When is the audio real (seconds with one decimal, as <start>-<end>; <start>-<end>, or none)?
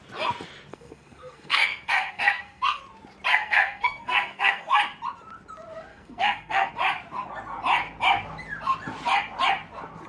0.0-0.7; 2.8-3.3; 4.8-5.9; 6.7-10.1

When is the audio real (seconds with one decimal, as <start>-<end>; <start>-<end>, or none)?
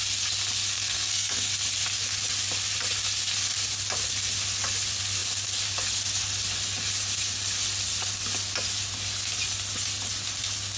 0.0-0.8; 1.5-10.8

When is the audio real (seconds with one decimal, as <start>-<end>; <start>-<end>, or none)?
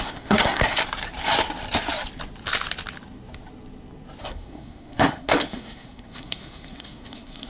0.8-4.2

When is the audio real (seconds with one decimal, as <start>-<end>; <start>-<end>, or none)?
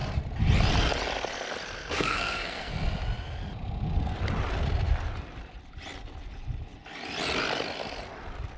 0.0-1.8; 2.7-8.6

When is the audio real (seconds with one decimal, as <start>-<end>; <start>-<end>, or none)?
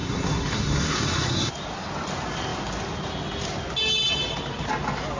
1.5-5.2